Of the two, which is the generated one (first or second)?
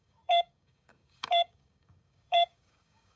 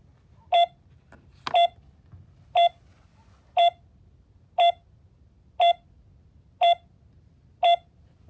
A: first